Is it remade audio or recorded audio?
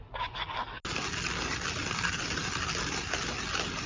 recorded